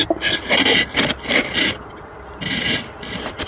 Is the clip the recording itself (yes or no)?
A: yes